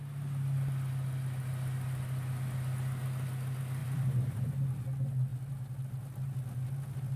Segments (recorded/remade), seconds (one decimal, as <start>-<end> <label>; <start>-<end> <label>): 0.0-3.8 recorded; 3.8-4.5 remade; 4.5-7.2 recorded